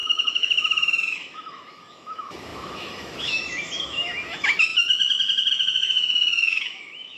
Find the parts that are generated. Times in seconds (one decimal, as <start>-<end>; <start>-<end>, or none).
0.0-7.2